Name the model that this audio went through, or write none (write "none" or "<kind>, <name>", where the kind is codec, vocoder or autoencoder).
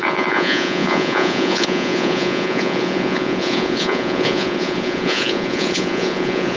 vocoder, Vocos